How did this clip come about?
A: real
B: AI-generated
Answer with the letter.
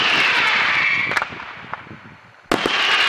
A